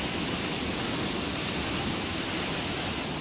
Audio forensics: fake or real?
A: real